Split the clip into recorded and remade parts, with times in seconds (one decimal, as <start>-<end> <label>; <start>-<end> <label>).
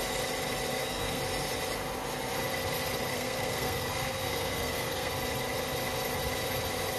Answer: 0.0-0.7 recorded; 0.7-1.2 remade; 1.2-3.1 recorded; 3.1-5.1 remade; 5.1-7.0 recorded